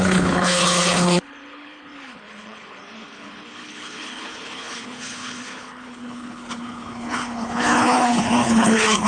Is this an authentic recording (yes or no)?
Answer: no